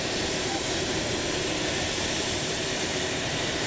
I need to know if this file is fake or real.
fake